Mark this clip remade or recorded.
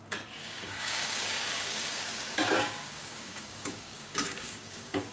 remade